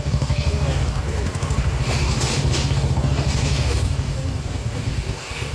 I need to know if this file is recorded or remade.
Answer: remade